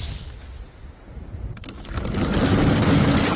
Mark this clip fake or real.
real